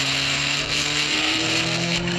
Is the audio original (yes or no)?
no